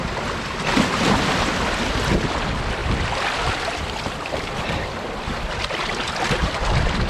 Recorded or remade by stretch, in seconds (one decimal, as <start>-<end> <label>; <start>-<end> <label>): 0.0-2.8 recorded; 2.8-7.1 remade